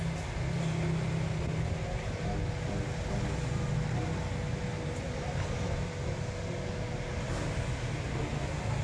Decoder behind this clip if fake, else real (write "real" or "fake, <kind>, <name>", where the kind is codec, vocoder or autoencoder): real